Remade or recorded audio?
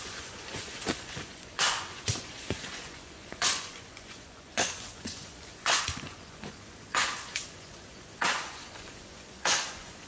remade